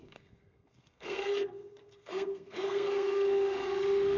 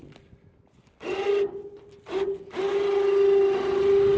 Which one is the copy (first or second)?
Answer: first